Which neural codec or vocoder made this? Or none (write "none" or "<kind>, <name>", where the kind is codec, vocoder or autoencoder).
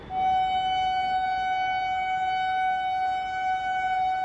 none